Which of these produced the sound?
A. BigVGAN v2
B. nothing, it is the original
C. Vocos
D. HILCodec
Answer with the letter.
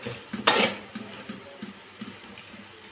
B